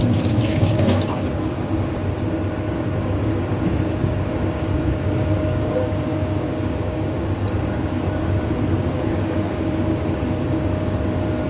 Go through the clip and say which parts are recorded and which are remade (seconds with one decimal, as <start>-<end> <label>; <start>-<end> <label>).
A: 0.0-2.0 remade; 2.0-2.7 recorded; 2.7-11.5 remade